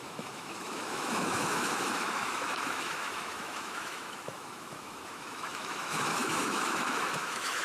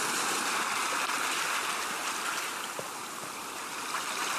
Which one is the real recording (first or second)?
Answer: second